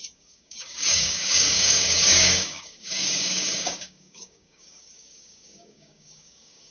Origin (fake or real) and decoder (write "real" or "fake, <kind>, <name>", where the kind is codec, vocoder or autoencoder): fake, codec, DAC